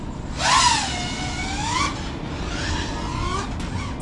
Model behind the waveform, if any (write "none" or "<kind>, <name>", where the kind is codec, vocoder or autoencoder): none